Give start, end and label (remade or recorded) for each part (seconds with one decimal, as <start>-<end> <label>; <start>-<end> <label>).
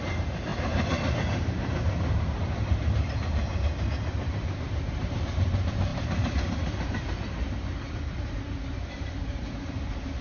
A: 0.0-10.2 remade